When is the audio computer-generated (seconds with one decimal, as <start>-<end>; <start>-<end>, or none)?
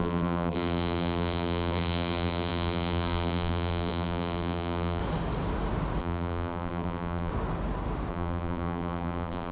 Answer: 0.0-5.0; 6.0-7.3; 8.1-9.5